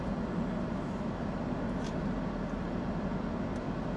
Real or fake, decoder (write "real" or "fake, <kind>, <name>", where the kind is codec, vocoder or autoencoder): real